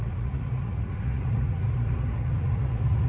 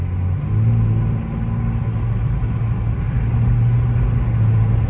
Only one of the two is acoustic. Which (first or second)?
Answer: second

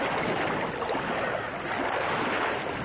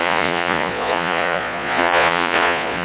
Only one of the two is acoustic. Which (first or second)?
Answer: first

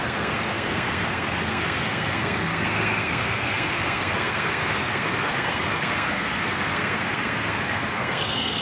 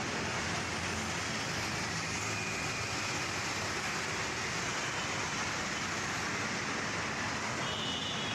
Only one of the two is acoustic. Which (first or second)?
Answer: second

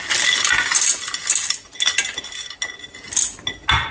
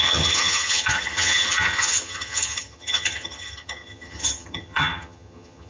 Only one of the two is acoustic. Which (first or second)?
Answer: first